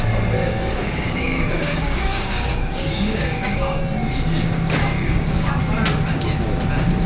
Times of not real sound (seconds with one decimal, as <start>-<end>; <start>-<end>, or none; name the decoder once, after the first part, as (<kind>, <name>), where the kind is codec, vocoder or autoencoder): 0.5-3.8 (codec, DAC); 4.8-5.5